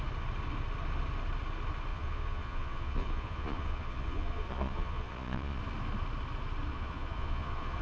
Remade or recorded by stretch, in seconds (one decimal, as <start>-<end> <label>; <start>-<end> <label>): 0.0-1.9 recorded; 1.9-5.6 remade; 5.6-6.7 recorded; 6.7-7.8 remade